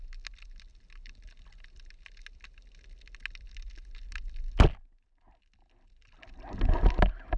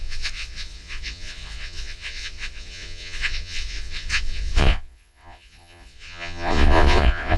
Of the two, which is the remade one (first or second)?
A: second